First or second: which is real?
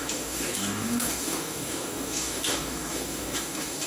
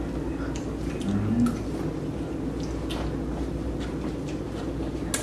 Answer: second